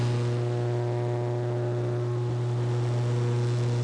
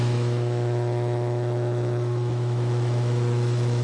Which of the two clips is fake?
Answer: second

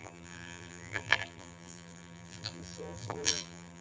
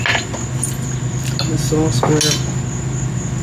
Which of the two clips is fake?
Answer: first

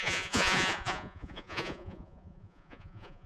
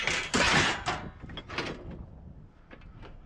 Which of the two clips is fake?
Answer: first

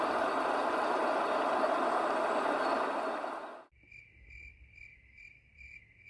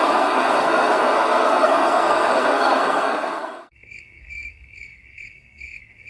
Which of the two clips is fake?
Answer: second